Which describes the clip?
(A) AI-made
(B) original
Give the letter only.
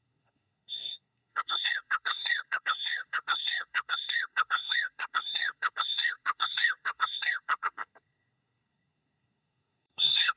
A